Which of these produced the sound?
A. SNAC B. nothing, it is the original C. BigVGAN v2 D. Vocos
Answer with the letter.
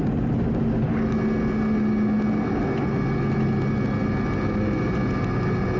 B